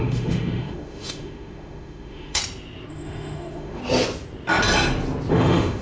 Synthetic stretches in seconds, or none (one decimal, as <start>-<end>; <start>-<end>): 0.0-2.4; 2.9-3.8; 5.3-5.8